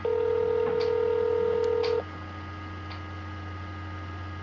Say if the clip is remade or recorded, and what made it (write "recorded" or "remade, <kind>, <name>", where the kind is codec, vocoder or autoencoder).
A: recorded